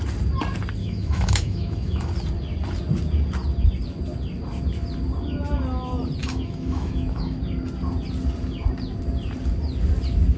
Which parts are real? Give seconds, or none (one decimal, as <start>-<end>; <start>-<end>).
0.0-0.8; 2.1-6.2; 7.4-10.4